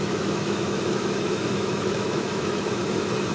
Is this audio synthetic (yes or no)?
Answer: yes